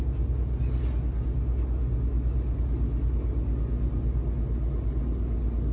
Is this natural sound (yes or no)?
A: yes